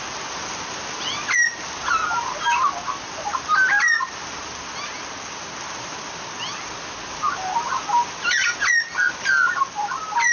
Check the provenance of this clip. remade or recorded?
recorded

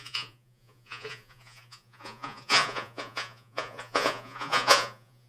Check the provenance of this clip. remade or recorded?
remade